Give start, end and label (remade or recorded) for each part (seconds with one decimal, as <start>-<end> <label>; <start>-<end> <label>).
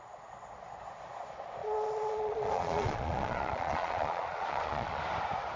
0.0-1.6 recorded; 1.6-5.0 remade; 5.0-5.6 recorded